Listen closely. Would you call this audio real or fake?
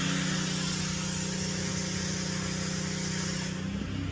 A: real